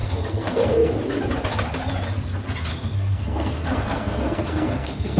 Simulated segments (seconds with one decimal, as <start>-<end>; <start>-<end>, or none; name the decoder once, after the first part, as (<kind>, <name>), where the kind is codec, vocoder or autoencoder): 0.0-0.9 (codec, SNAC); 2.7-5.2